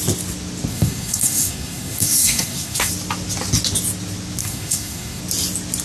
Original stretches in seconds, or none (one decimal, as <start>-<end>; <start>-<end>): 0.0-0.7; 2.9-4.4; 5.2-5.8